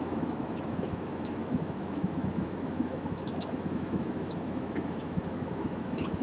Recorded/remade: remade